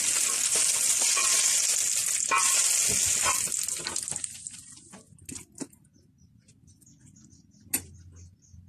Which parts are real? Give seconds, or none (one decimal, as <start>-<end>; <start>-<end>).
0.0-8.7